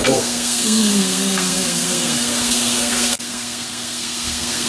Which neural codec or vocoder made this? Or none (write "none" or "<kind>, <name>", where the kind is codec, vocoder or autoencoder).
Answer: codec, SNAC